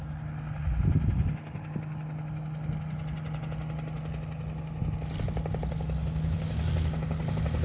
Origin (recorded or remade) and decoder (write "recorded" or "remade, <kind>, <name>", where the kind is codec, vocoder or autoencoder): recorded